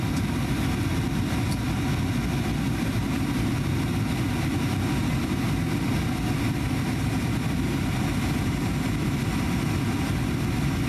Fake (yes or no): no